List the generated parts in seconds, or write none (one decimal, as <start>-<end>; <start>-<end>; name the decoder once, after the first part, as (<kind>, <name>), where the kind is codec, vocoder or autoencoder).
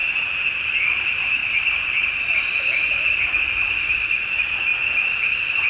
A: 0.8-5.7 (vocoder, BigVGAN v2)